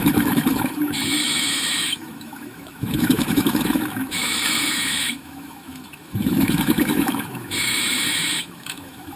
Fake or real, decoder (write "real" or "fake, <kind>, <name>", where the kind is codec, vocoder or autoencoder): fake, autoencoder, DAC-VAE